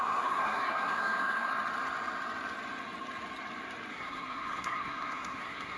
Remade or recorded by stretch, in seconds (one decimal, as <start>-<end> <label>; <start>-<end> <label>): 0.0-1.5 remade; 1.5-3.9 recorded; 3.9-5.8 remade